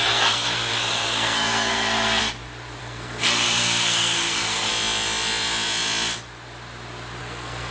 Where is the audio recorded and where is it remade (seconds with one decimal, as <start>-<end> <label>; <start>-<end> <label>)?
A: 0.0-2.2 remade; 2.2-2.8 recorded; 2.8-4.7 remade; 4.7-7.2 recorded; 7.2-7.7 remade